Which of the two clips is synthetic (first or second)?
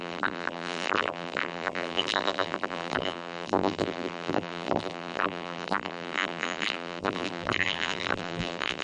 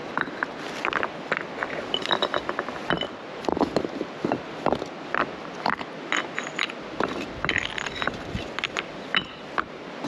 first